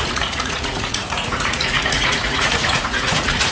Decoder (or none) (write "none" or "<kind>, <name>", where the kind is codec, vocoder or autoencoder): vocoder, Vocos